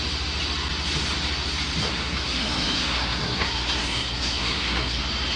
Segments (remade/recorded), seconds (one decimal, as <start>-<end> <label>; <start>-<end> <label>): 0.0-1.8 recorded; 1.8-5.0 remade; 5.0-5.4 recorded